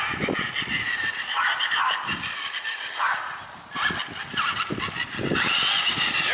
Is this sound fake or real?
real